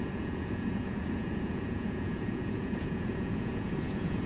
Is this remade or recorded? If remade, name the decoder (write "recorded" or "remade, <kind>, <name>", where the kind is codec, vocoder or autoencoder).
remade, vocoder, Vocos